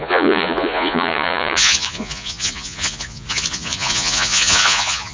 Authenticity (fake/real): fake